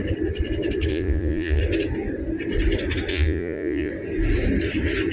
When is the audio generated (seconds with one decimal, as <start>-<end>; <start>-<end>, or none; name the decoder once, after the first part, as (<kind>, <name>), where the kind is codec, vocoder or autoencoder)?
0.9-1.6 (vocoder, Vocos); 3.1-3.9